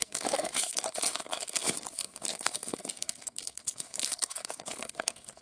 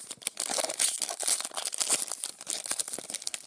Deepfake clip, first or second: first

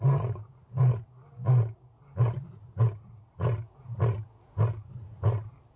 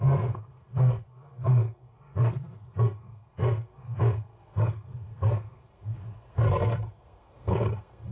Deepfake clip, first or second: second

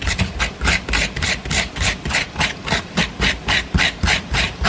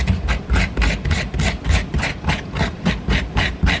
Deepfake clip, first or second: first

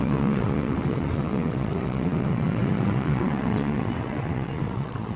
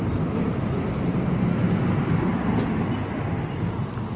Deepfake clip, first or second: first